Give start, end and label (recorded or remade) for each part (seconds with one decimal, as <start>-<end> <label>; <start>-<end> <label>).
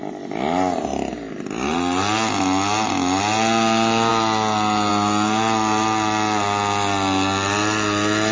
0.0-8.3 recorded